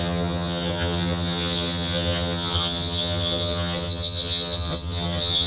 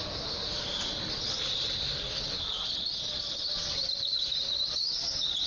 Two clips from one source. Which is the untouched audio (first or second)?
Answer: second